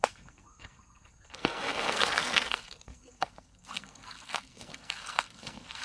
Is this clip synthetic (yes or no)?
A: yes